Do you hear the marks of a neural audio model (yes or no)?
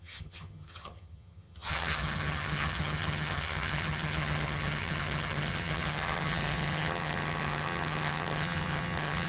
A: yes